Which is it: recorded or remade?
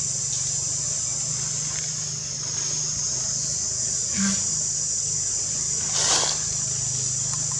recorded